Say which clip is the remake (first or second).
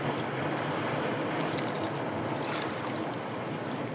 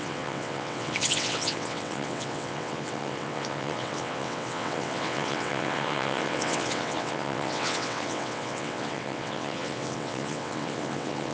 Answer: second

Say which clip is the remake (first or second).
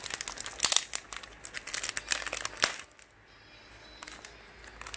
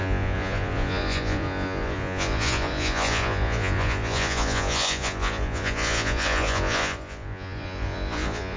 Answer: second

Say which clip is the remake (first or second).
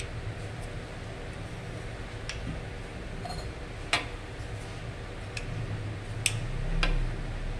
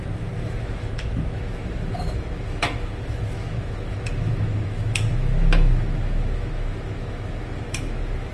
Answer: second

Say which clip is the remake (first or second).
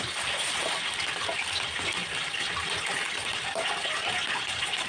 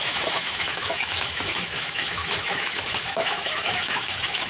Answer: second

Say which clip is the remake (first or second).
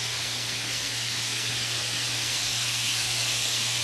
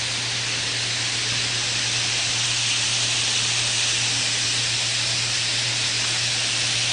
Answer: first